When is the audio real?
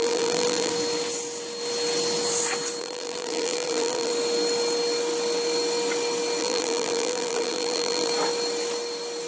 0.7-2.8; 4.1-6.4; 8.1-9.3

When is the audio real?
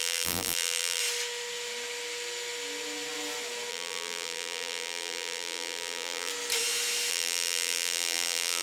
1.0-3.7; 6.3-7.1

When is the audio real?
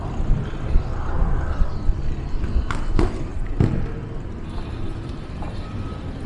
3.3-4.3